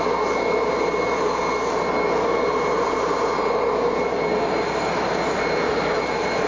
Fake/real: real